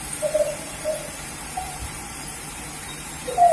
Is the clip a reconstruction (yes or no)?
yes